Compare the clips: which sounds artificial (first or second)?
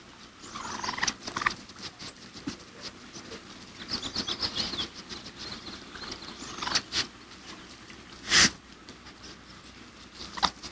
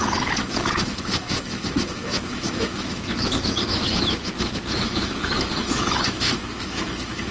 second